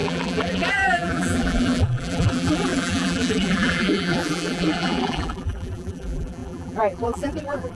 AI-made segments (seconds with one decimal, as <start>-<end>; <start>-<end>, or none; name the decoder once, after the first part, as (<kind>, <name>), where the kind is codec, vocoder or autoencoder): 0.0-7.8 (vocoder, BigVGAN v2)